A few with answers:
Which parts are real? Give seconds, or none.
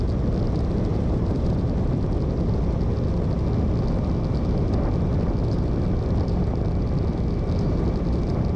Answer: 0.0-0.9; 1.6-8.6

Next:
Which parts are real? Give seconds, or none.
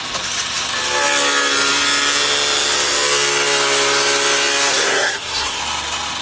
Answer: 0.0-4.7; 5.6-6.2